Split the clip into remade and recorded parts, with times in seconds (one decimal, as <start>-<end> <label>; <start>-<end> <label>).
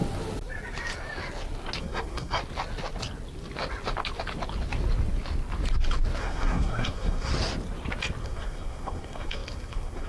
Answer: 0.0-1.8 recorded; 1.8-2.4 remade; 2.4-6.2 recorded; 6.2-7.3 remade; 7.3-8.2 recorded; 8.2-10.1 remade